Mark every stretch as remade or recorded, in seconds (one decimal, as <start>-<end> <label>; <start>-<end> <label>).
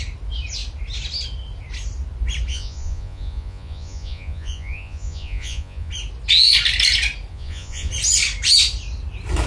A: 0.0-2.5 recorded; 2.5-5.9 remade; 5.9-7.3 recorded; 7.3-7.9 remade; 7.9-9.5 recorded